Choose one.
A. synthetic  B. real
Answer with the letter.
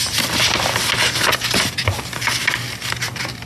B